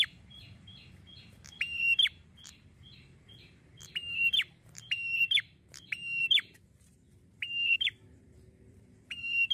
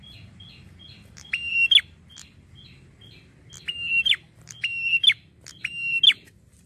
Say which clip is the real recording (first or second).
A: second